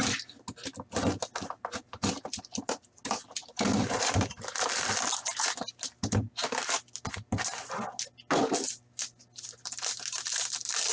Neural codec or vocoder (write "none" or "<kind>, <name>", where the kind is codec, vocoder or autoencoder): none